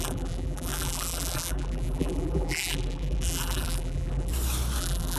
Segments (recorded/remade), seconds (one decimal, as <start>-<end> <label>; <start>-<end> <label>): 0.0-4.3 remade; 4.3-4.8 recorded; 4.8-5.2 remade